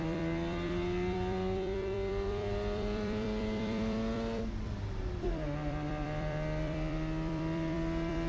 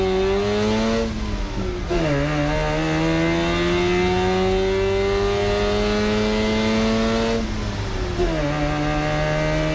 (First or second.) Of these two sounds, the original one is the second